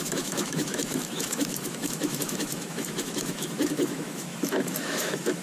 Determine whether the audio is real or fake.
fake